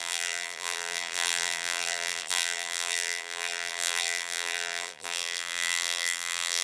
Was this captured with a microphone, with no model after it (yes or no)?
no